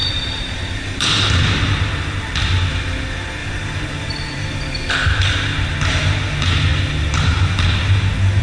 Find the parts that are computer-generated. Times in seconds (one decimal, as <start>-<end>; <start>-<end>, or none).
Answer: 0.0-1.3; 3.4-4.9